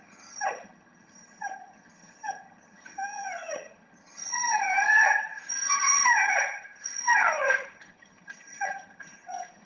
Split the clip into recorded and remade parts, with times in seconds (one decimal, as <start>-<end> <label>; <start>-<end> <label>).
0.0-9.7 remade